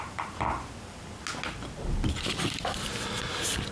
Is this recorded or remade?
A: recorded